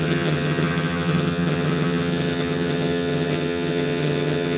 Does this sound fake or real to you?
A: fake